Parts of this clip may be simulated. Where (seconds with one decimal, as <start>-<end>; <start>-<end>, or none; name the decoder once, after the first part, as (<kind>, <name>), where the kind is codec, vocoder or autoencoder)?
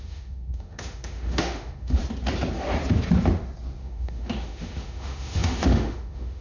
0.0-2.0 (autoencoder, DAC-VAE); 3.8-6.4